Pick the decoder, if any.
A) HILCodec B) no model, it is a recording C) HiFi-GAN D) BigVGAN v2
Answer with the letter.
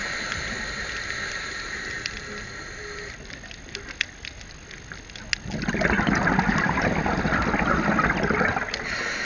B